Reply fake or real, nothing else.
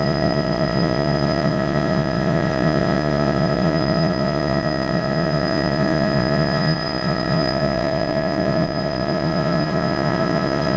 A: fake